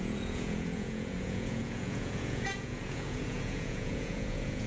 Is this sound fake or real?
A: fake